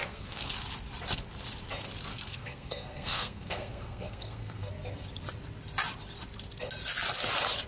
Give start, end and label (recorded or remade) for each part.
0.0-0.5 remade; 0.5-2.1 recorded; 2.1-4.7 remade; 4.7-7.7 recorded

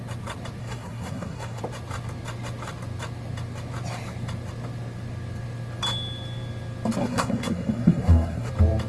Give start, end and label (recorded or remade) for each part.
0.0-0.6 recorded; 0.6-1.6 remade; 1.6-7.0 recorded; 7.0-8.5 remade; 8.5-8.9 recorded

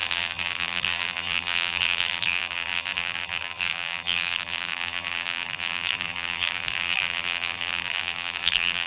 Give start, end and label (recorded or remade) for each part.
0.0-8.9 remade

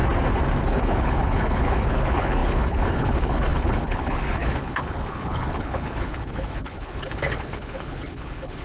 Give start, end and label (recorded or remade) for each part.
0.0-0.7 recorded; 0.7-8.6 remade

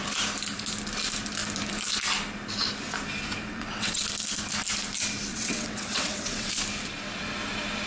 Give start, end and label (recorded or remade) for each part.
0.0-3.4 recorded; 3.4-4.0 remade; 4.0-5.3 recorded; 5.3-6.5 remade; 6.5-7.9 recorded

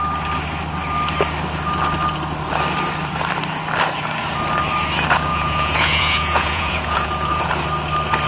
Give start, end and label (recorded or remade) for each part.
0.0-5.3 recorded; 5.3-7.5 remade; 7.5-8.3 recorded

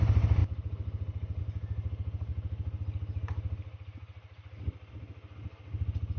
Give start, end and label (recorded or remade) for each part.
0.0-6.2 recorded